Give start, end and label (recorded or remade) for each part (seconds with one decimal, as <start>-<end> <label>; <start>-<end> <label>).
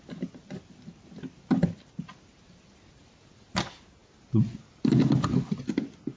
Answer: 0.0-6.2 recorded